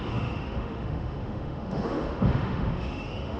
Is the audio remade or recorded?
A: remade